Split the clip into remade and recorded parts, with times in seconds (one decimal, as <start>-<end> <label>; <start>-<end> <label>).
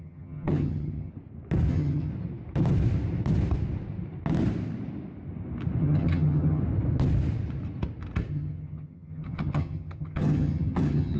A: 0.0-1.1 remade; 1.1-1.7 recorded; 1.7-2.1 remade; 2.1-5.8 recorded; 5.8-6.6 remade; 6.6-8.3 recorded; 8.3-11.2 remade